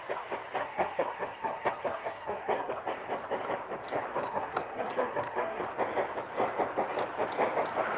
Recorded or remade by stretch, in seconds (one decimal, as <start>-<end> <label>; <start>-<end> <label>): 0.0-0.6 recorded; 0.6-2.8 remade; 2.8-4.1 recorded; 4.1-5.6 remade; 5.6-8.0 recorded